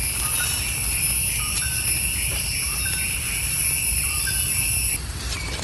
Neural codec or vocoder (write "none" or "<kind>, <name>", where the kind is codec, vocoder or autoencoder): none